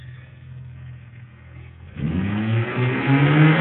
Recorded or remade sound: remade